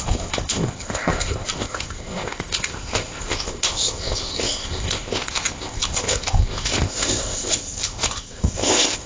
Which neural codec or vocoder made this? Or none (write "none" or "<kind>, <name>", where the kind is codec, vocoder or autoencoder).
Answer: codec, ZipCodec